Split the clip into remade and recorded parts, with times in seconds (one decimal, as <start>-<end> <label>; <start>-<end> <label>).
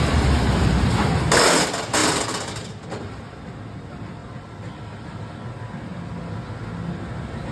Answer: 0.0-4.2 recorded; 4.2-5.3 remade; 5.3-7.5 recorded